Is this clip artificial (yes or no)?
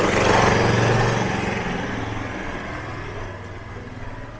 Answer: no